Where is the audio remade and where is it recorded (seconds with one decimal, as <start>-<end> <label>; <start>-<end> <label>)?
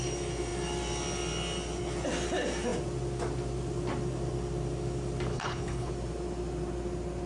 0.0-5.3 recorded; 5.3-5.9 remade; 5.9-7.3 recorded